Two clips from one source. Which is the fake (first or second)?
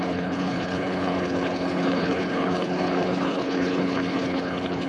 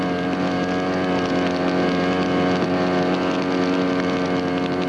first